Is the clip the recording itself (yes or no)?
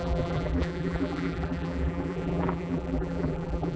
no